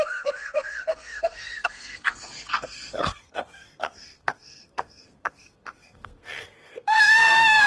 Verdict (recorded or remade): remade